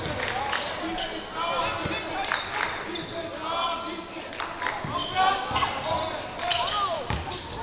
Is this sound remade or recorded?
recorded